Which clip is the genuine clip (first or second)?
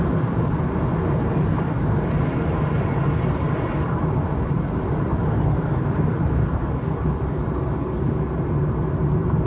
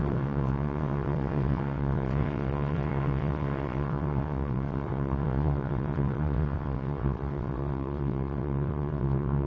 first